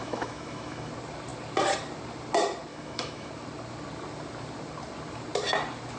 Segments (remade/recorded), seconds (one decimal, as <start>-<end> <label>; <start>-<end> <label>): 0.0-0.9 remade; 0.9-2.7 recorded; 2.7-3.3 remade; 3.3-6.0 recorded